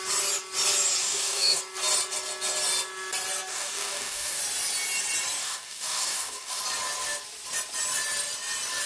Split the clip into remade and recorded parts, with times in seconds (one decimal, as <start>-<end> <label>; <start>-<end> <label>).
0.0-1.0 recorded; 1.0-1.6 remade; 1.6-3.5 recorded; 3.5-4.4 remade; 4.4-5.4 recorded; 5.4-6.6 remade; 6.6-8.9 recorded